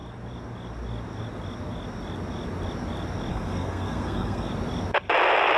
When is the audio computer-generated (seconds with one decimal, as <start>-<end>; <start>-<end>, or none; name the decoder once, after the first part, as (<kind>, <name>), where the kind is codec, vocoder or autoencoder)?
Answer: 3.3-4.5 (codec, SNAC)